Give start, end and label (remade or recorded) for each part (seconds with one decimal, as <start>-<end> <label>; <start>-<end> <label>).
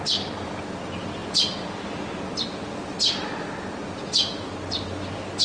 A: 0.0-5.4 recorded